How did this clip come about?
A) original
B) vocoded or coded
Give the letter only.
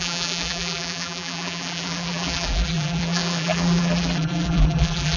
B